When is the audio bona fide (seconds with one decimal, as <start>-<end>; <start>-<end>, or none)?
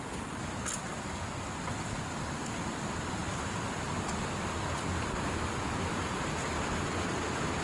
0.0-7.6